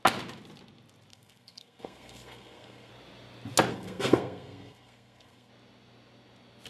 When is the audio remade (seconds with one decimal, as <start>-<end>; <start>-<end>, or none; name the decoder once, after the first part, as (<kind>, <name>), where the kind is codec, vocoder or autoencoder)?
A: 1.1-2.9 (codec, SNAC); 3.7-5.5